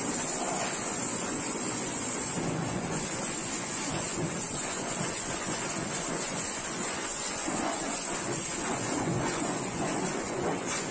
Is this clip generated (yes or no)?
yes